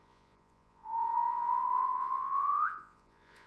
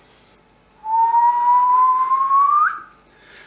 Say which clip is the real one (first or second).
second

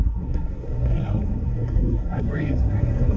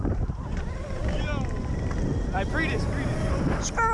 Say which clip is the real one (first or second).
second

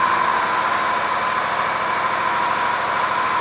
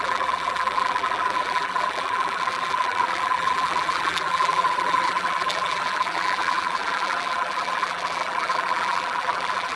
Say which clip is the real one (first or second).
first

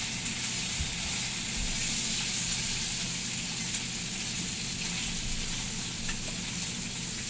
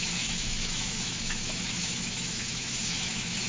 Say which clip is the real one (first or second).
first